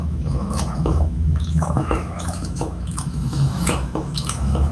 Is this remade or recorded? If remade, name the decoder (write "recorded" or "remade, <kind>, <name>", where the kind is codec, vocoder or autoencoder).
remade, autoencoder, DAC-VAE